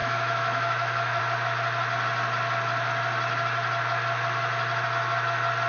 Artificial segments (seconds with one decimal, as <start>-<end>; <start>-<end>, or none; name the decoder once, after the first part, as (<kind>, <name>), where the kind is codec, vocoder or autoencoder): 0.0-1.2 (autoencoder, DAC-VAE)